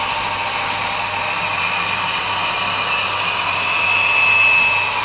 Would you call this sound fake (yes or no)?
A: no